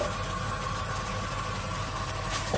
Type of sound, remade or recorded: recorded